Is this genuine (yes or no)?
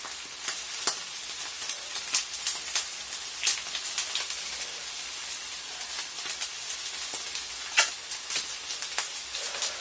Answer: yes